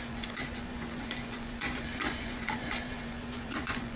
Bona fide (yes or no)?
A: no